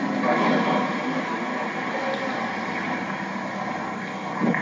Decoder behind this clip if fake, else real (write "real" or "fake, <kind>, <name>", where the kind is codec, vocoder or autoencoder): real